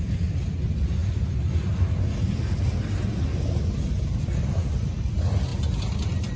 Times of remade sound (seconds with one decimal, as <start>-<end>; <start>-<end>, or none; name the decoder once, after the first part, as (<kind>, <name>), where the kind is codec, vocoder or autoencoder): none